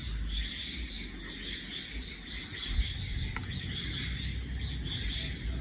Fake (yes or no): no